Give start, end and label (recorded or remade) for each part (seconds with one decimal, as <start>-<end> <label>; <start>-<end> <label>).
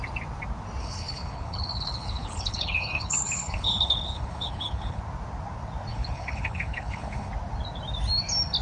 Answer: 0.0-0.8 recorded; 0.8-5.0 remade; 5.0-5.9 recorded; 5.9-7.3 remade; 7.3-8.6 recorded